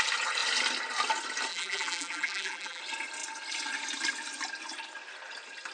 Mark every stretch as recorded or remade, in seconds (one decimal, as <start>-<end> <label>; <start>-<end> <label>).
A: 0.0-1.5 recorded; 1.5-2.8 remade; 2.8-5.7 recorded